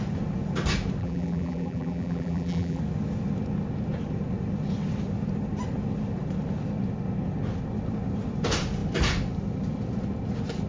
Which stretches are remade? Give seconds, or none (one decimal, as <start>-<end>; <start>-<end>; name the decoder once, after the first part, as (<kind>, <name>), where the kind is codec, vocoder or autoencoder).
1.0-2.8 (vocoder, BigVGAN v2)